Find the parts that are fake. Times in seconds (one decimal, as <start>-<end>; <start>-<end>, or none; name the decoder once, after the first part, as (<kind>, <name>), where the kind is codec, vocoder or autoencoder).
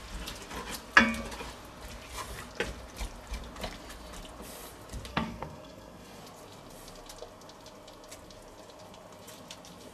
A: 5.1-6.2 (codec, SNAC)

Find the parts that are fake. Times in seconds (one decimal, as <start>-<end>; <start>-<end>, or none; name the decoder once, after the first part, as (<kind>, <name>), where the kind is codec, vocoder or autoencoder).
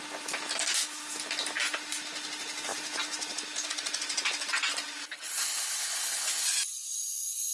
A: 5.0-6.4 (codec, HILCodec)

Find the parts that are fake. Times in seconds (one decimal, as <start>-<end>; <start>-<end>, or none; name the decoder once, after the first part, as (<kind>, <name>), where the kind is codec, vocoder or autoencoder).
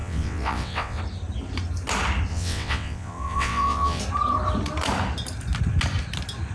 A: 0.0-1.0 (vocoder, WaveNeXt); 2.3-4.0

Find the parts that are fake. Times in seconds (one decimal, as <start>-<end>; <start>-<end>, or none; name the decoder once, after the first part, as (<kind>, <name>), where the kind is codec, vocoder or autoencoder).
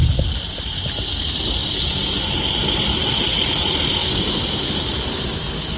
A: 0.0-1.6 (vocoder, BigVGAN v2); 2.7-4.0; 4.7-5.8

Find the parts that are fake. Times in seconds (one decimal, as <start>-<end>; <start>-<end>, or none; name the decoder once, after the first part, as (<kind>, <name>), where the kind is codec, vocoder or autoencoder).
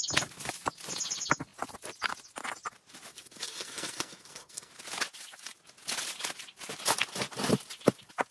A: 3.1-4.7 (codec, SNAC)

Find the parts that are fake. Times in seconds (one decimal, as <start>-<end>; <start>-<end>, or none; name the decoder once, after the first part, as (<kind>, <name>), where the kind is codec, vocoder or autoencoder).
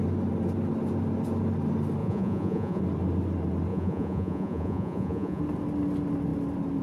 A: 2.0-2.8 (vocoder, Vocos); 3.7-5.4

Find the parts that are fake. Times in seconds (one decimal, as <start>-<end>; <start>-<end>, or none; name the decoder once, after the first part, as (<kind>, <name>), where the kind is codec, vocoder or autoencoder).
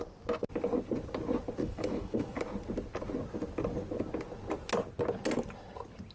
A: 1.6-2.4 (autoencoder, DAC-VAE)